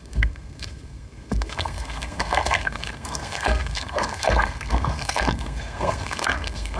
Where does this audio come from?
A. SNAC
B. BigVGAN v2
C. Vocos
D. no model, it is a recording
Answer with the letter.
A